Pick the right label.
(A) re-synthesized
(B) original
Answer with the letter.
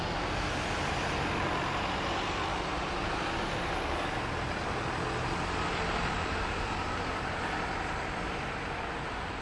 B